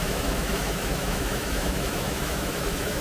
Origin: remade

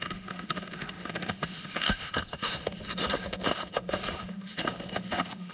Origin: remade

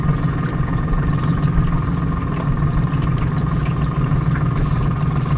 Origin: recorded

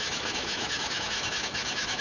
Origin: remade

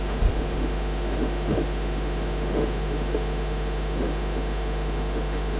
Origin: remade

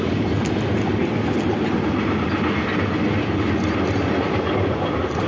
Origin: recorded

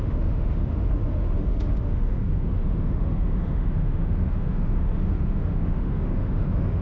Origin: remade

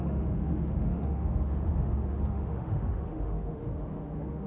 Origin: remade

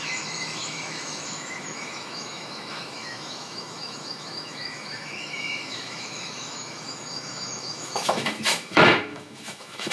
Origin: remade